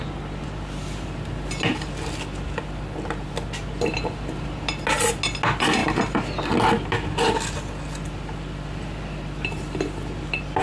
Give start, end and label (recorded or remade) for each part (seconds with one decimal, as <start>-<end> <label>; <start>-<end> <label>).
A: 0.0-10.6 recorded